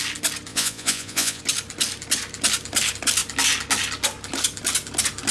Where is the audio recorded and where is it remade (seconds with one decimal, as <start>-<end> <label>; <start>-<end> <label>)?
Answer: 0.0-0.5 recorded; 0.5-1.4 remade; 1.4-5.3 recorded